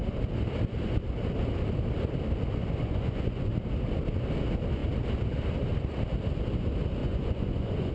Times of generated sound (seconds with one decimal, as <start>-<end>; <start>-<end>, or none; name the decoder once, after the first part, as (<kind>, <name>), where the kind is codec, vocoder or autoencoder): 2.8-3.5 (vocoder, Vocos); 7.0-7.9